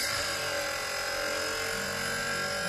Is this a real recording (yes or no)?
yes